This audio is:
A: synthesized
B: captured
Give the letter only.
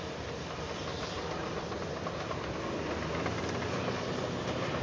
B